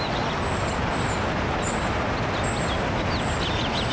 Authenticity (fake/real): real